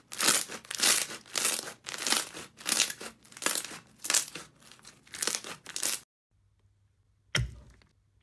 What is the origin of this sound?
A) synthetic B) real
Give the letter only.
B